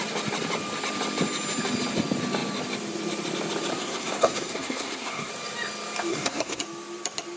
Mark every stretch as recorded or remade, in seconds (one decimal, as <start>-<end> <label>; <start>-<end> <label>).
0.0-3.7 recorded; 3.7-5.3 remade; 5.3-6.1 recorded; 6.1-6.6 remade; 6.6-7.4 recorded